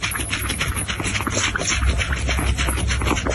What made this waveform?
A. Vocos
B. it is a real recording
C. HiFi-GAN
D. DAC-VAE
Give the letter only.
B